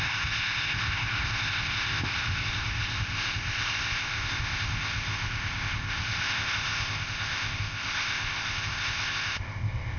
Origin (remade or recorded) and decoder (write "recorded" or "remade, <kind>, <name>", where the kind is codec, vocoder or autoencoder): remade, codec, ZipCodec